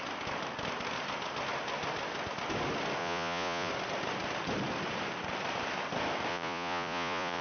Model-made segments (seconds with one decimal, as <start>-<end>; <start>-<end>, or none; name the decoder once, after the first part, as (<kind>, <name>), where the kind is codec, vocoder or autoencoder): 3.0-3.7 (vocoder, Vocos); 6.3-7.4